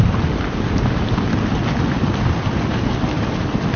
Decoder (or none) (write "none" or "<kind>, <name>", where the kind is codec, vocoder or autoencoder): none